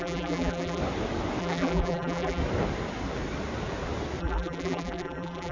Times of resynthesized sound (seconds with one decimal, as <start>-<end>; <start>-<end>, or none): 0.0-0.8; 1.4-2.4; 4.2-5.5